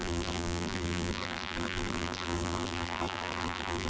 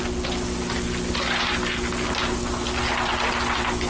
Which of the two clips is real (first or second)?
second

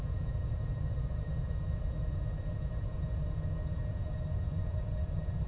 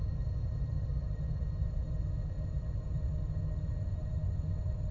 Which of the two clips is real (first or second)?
second